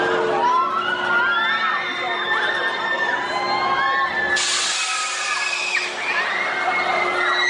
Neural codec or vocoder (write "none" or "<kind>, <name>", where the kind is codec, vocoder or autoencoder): none